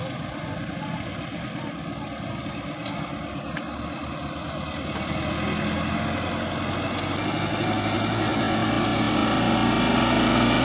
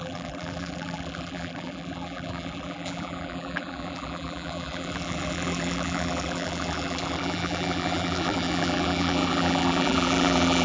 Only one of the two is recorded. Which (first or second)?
first